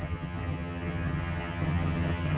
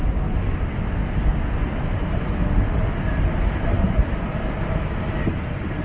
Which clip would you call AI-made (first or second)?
first